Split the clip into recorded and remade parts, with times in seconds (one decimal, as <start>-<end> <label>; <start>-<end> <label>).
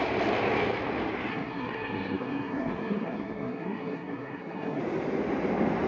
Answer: 0.0-1.3 recorded; 1.3-4.8 remade; 4.8-5.9 recorded